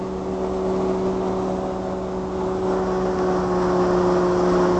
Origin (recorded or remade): recorded